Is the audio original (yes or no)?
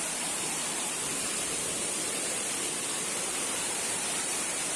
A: no